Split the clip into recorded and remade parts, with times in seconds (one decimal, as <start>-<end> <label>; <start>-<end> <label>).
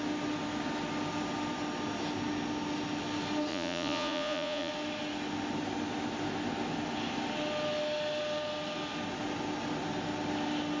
0.0-3.5 recorded; 3.5-4.7 remade; 4.7-10.8 recorded